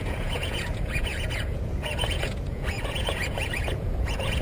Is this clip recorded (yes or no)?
no